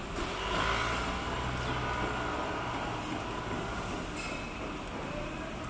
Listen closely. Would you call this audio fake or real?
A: real